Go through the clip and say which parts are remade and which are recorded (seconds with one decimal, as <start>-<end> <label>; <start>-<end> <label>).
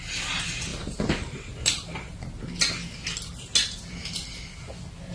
0.0-0.7 recorded; 0.7-2.2 remade; 2.2-5.1 recorded